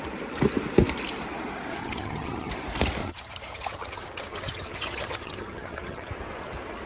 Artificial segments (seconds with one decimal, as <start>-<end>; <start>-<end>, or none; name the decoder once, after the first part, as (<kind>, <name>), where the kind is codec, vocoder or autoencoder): 1.8-2.5 (vocoder, HiFi-GAN); 3.0-6.1